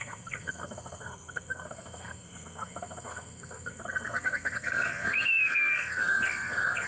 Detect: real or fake fake